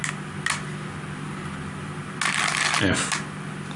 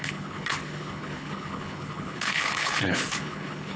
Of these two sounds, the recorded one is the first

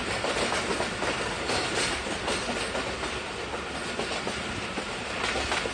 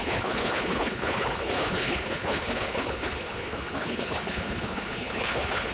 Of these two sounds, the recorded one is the first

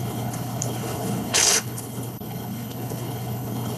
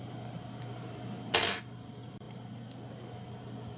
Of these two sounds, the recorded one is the second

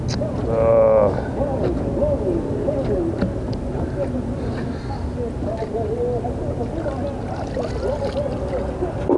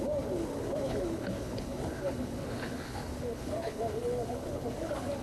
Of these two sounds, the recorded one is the first